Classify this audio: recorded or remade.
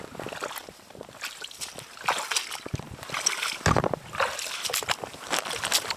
recorded